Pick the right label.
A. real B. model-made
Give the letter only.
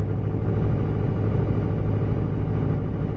A